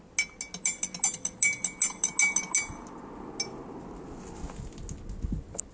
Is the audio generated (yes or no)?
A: no